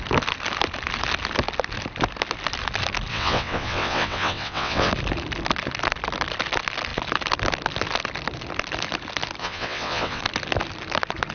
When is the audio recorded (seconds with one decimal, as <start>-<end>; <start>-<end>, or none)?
0.0-3.1; 4.9-9.4; 10.2-11.3